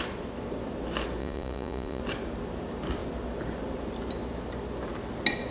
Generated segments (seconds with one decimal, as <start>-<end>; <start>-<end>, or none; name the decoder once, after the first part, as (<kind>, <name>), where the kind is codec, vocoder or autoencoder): 1.2-2.0 (vocoder, Vocos)

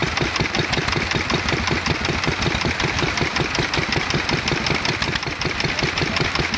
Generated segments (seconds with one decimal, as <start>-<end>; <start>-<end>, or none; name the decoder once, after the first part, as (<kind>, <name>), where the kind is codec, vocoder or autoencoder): none

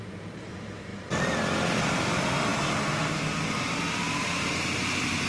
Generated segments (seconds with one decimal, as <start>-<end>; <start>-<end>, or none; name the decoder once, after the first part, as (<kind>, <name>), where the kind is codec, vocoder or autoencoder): 0.0-5.3 (vocoder, BigVGAN v2)

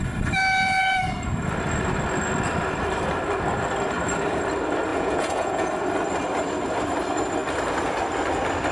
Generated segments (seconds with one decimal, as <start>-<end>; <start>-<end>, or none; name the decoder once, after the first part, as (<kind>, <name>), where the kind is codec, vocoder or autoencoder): 4.9-5.7 (vocoder, Vocos)

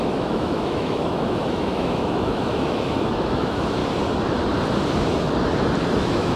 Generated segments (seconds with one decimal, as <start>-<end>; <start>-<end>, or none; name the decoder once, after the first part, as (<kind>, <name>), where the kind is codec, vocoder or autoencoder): 0.0-3.8 (autoencoder, DAC-VAE); 6.0-6.4